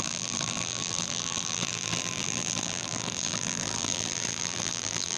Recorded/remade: remade